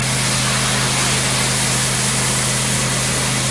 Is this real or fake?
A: real